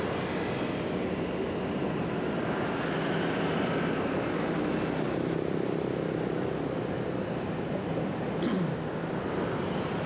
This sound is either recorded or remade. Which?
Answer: recorded